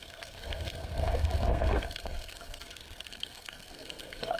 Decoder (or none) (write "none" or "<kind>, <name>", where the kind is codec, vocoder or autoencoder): codec, SNAC